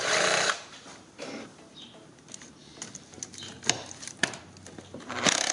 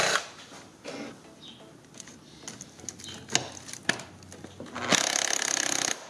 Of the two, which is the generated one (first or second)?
first